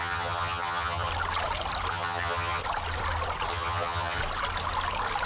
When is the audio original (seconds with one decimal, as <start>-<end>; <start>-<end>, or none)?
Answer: 1.1-1.9; 2.6-3.5; 4.2-5.3